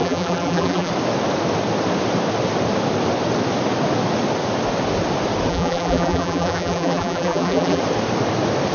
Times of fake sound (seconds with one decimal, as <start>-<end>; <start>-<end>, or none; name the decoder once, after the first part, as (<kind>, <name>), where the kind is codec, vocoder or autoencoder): 0.0-0.9 (vocoder, BigVGAN v2); 5.5-7.8